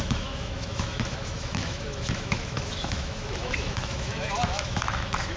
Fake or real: fake